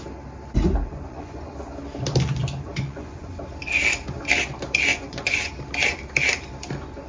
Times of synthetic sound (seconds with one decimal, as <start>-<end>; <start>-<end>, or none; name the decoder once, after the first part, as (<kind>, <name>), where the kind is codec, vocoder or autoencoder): 0.9-1.5 (vocoder, Vocos); 2.7-3.4; 4.9-5.5